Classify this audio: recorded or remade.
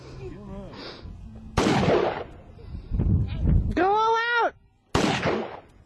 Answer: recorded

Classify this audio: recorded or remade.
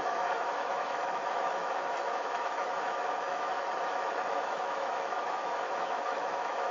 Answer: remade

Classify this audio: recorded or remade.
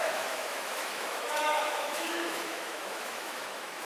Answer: remade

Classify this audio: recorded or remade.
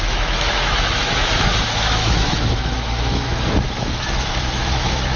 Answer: remade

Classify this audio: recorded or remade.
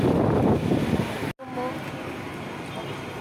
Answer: recorded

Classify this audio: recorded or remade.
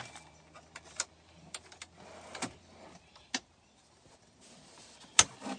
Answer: recorded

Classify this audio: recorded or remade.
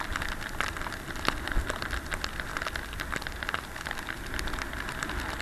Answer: recorded